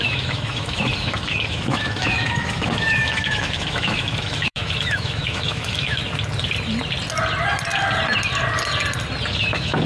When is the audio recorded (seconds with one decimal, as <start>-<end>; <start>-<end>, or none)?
6.0-9.3